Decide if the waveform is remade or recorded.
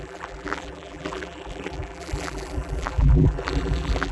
remade